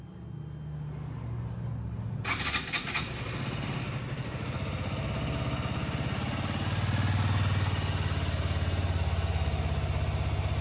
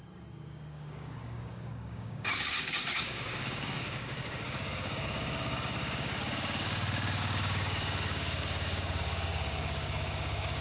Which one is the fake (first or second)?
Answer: second